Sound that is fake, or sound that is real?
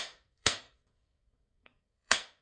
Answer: fake